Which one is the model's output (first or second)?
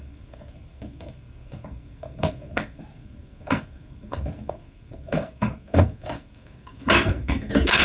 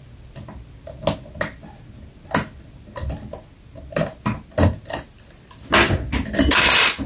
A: first